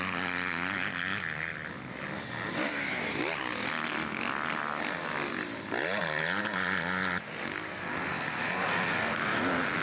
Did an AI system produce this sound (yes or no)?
no